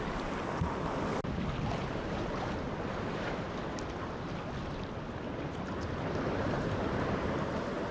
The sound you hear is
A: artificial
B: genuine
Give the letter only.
B